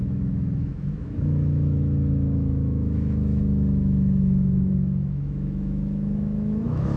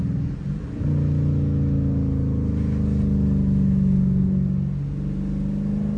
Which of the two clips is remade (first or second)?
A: first